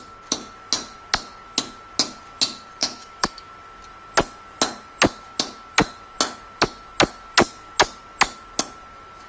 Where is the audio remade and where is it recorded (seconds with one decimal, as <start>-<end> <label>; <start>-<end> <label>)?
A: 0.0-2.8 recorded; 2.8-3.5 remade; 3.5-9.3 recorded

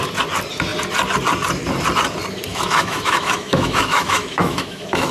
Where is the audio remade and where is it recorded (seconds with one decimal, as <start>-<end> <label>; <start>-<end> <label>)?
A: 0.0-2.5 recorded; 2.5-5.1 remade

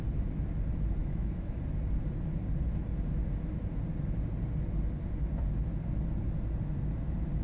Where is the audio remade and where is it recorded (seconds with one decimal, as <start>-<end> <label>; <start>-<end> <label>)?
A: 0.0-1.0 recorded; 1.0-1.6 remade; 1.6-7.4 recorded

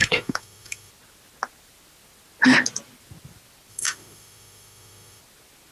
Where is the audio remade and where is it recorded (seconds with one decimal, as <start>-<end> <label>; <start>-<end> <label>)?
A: 0.0-0.9 remade; 0.9-3.7 recorded; 3.7-5.2 remade; 5.2-5.7 recorded

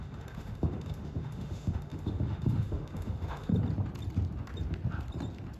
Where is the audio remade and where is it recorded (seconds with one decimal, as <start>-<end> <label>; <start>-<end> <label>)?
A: 0.0-3.5 remade; 3.5-5.6 recorded

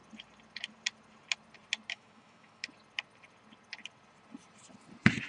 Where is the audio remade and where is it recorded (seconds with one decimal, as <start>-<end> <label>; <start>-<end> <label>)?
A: 0.0-1.9 recorded; 1.9-2.6 remade; 2.6-5.3 recorded